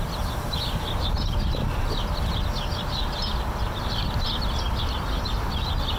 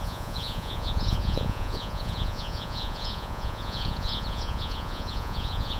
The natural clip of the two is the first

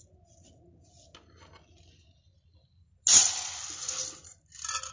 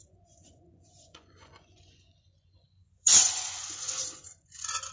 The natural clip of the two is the first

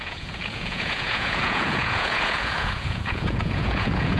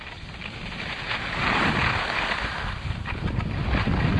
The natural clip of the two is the second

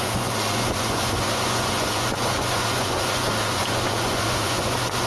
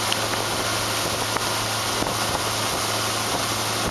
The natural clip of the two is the second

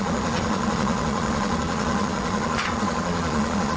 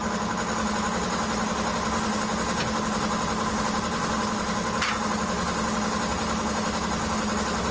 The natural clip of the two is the second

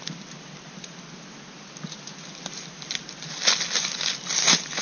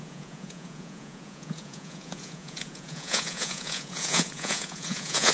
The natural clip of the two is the first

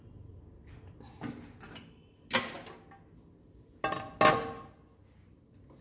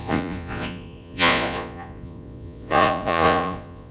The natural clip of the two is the first